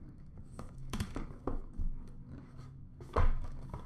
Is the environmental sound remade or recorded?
remade